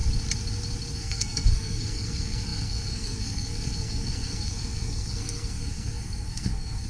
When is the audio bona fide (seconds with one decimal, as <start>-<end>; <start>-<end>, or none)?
0.0-0.9